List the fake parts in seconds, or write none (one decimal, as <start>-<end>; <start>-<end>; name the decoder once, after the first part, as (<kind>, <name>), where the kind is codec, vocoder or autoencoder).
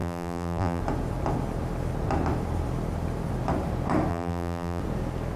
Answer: 0.0-0.8 (vocoder, BigVGAN v2); 4.1-4.8